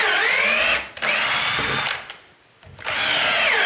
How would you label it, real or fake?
real